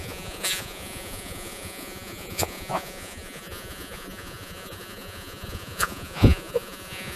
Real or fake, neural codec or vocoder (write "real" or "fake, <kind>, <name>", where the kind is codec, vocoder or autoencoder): fake, vocoder, Vocos